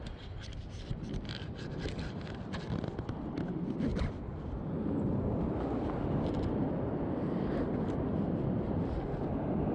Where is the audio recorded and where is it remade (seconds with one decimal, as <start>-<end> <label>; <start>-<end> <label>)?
0.0-9.7 recorded